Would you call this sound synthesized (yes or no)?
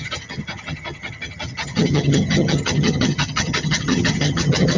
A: yes